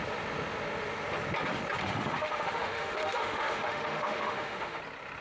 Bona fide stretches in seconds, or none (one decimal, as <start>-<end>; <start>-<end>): 0.0-1.8; 4.8-5.2